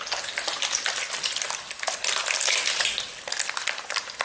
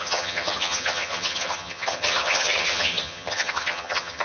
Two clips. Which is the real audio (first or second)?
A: first